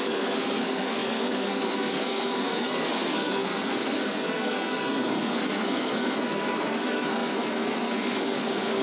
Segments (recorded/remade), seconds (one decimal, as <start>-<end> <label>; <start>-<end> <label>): 0.0-8.8 remade